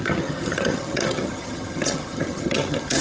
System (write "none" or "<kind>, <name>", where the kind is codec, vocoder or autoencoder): vocoder, HiFi-GAN